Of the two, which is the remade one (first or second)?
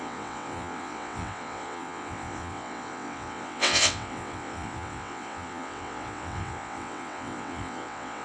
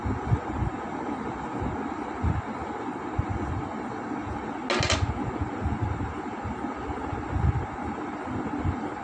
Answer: first